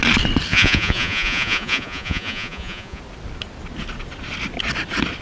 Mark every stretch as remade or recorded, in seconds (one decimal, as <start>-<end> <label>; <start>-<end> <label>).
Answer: 0.0-0.5 recorded; 0.5-3.0 remade; 3.0-5.2 recorded